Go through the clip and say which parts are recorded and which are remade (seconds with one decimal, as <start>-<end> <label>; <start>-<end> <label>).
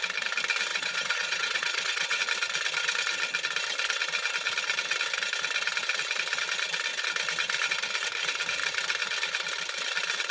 0.0-0.7 recorded; 0.7-2.2 remade; 2.2-10.3 recorded